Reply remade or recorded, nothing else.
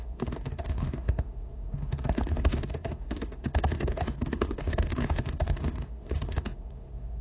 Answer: remade